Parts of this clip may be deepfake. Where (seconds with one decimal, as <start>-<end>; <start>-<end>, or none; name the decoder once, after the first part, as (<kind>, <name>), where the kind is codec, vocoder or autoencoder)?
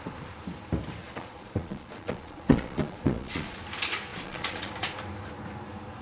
1.0-3.6 (vocoder, Vocos); 4.1-4.7